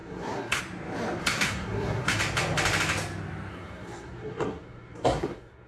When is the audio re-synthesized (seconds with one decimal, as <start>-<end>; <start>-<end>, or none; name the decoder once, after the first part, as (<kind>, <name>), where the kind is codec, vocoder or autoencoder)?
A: 0.0-0.6 (codec, SNAC); 1.2-2.2; 3.5-5.7